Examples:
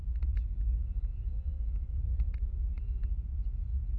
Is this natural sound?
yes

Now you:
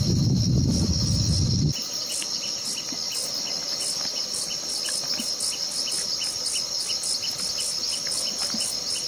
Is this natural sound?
yes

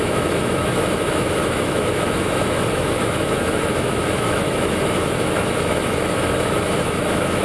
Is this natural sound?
no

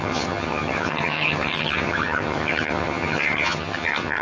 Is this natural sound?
no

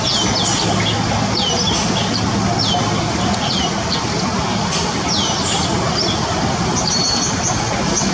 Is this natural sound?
yes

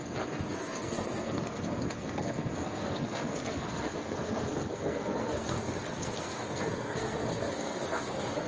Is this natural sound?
no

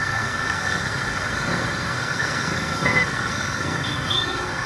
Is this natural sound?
no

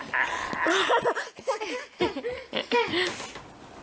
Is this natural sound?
yes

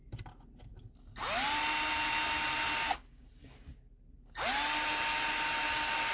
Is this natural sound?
yes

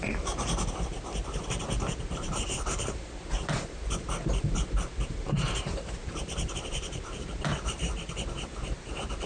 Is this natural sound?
no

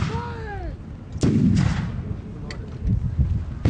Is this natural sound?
yes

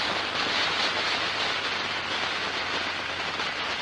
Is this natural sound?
yes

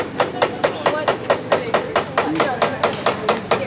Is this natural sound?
yes